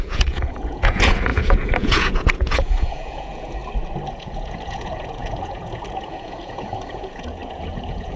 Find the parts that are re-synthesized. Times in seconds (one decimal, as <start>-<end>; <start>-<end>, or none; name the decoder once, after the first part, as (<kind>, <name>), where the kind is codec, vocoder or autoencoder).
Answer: 0.0-3.6 (vocoder, Vocos); 4.1-8.2